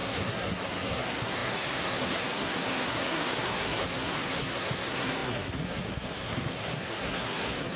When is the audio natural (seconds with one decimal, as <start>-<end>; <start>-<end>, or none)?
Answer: none